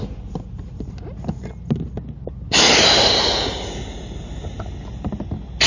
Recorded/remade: recorded